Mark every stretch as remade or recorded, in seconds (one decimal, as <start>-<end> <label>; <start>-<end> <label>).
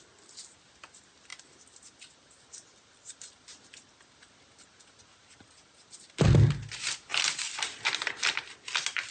0.0-9.1 recorded